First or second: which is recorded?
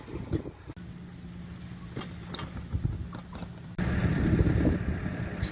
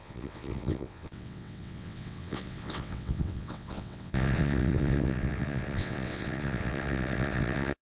first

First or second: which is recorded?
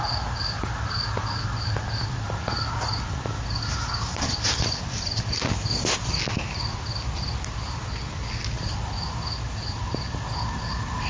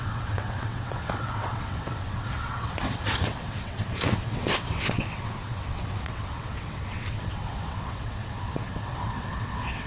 first